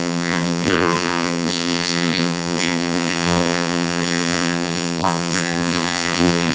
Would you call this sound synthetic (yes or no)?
yes